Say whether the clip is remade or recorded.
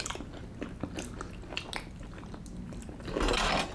recorded